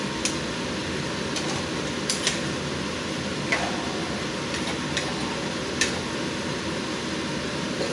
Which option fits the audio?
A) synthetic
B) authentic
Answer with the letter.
B